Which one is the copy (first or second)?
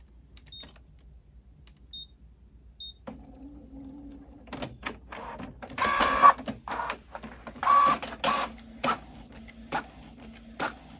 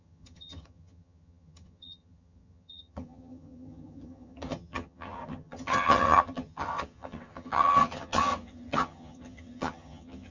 second